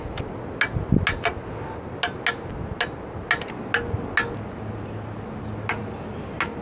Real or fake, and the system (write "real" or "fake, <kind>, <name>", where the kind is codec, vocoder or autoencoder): real